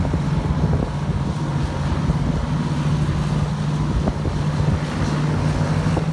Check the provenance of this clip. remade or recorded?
recorded